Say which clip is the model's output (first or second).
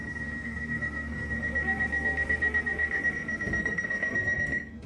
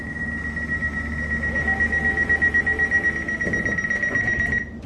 first